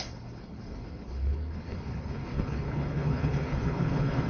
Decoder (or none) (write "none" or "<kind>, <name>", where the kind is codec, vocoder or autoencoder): codec, HILCodec